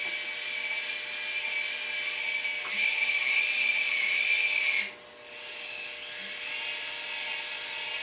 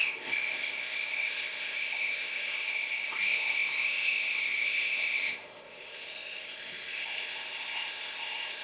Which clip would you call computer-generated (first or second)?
second